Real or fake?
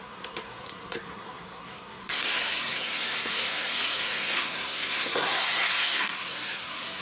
fake